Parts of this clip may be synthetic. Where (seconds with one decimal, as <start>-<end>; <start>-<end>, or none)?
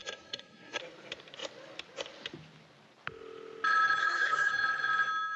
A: 0.0-0.8; 4.0-4.5